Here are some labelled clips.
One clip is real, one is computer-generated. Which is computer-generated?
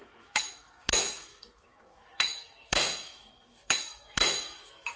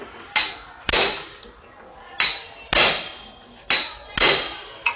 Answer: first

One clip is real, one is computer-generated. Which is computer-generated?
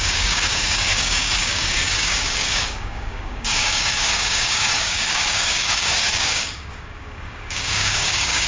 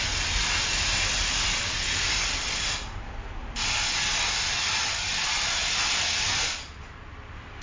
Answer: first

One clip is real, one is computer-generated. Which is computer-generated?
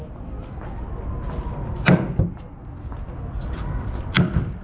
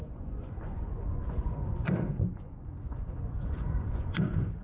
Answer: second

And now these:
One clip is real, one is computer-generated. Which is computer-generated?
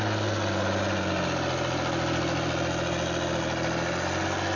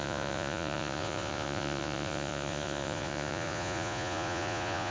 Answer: second